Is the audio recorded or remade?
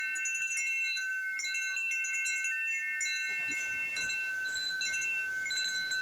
recorded